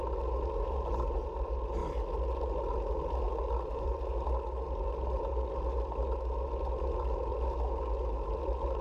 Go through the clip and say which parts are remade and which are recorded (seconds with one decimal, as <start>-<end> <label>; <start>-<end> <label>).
0.0-8.8 recorded